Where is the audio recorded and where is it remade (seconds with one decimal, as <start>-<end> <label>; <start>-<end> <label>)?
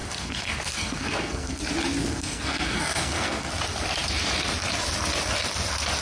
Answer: 0.0-1.6 remade; 1.6-2.0 recorded; 2.0-3.5 remade; 3.5-6.0 recorded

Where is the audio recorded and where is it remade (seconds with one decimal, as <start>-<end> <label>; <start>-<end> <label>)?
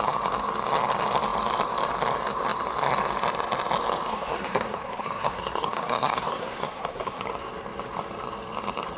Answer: 0.0-4.1 recorded; 4.1-7.2 remade; 7.2-9.0 recorded